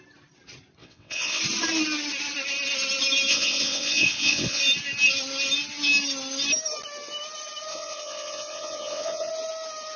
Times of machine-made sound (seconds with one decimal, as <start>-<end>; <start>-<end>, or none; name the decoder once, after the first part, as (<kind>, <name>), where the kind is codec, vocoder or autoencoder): 0.8-1.4 (vocoder, WaveNeXt); 3.3-4.6; 7.7-9.3